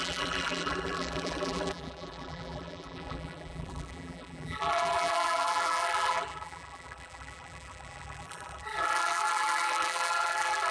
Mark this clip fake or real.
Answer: fake